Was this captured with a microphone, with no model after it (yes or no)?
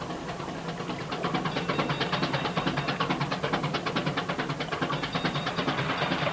no